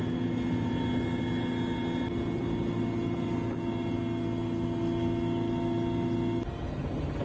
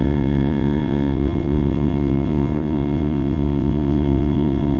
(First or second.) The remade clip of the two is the second